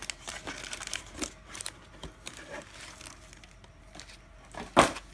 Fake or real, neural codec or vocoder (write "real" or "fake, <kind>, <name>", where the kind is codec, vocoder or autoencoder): real